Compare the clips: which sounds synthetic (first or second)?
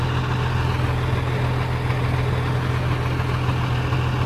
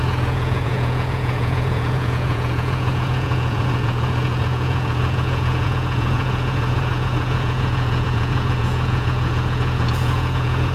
second